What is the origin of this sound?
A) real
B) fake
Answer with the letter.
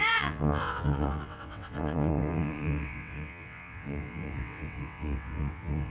B